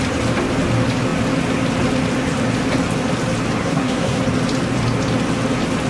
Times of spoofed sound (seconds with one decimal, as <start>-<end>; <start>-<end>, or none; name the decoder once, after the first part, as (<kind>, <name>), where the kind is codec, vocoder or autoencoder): 3.6-4.2 (codec, SNAC)

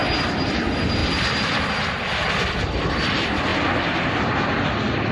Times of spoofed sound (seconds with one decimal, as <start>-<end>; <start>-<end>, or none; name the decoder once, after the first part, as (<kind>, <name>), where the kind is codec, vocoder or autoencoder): 0.0-3.5 (vocoder, BigVGAN v2); 4.2-5.1

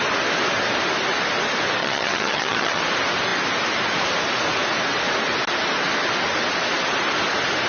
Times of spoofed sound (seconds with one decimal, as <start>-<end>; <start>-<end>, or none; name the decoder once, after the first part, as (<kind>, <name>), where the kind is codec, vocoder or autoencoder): 1.8-2.8 (vocoder, HiFi-GAN)

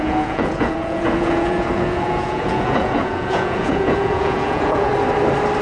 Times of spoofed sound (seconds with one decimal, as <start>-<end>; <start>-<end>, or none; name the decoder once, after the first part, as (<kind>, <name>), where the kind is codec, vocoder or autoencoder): 0.0-4.9 (vocoder, Vocos)

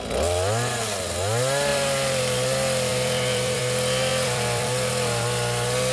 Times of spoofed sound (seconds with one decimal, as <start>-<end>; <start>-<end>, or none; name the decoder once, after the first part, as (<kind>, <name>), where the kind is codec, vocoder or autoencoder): 1.7-2.2 (vocoder, BigVGAN v2); 2.9-3.6; 4.1-4.9

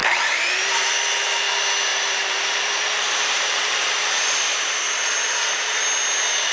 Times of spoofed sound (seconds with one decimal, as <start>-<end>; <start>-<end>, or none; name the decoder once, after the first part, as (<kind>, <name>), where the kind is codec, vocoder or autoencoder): 0.0-0.9 (vocoder, BigVGAN v2); 1.9-5.8